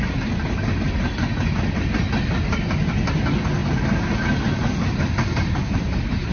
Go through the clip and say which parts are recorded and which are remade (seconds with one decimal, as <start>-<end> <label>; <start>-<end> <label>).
0.0-3.6 recorded; 3.6-6.3 remade